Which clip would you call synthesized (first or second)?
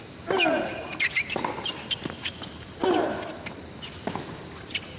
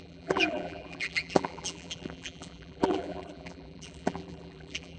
second